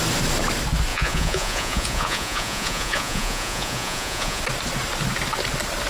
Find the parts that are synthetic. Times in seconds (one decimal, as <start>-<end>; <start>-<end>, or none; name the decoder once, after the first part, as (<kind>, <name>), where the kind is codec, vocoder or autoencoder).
0.9-4.4 (vocoder, Vocos)